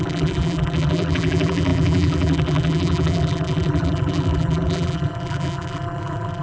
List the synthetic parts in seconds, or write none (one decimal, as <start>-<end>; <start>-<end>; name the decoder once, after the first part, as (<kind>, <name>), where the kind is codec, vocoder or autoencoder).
0.0-6.4 (vocoder, BigVGAN v2)